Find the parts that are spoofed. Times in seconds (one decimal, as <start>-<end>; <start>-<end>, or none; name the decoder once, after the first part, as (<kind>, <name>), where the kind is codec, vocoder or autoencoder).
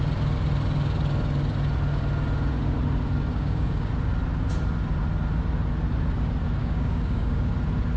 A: 3.3-3.9 (codec, DAC); 6.6-7.5